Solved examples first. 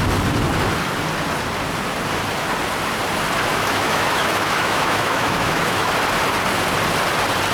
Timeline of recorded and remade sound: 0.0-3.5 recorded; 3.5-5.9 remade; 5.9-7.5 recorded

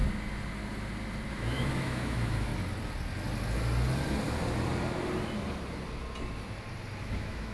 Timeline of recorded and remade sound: 0.0-1.3 recorded; 1.3-2.5 remade; 2.5-7.0 recorded; 7.0-7.5 remade